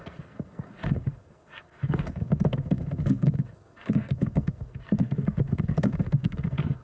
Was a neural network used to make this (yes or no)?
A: yes